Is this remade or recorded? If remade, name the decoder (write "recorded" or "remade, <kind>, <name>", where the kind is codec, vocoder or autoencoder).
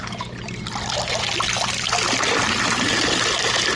recorded